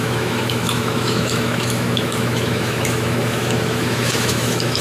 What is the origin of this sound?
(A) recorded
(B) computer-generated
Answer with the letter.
B